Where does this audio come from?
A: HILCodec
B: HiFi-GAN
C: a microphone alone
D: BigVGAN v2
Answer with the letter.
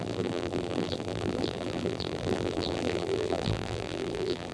D